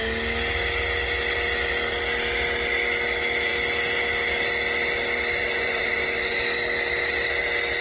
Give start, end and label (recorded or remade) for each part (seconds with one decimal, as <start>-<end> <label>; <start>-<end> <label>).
0.0-5.4 recorded; 5.4-6.4 remade; 6.4-7.8 recorded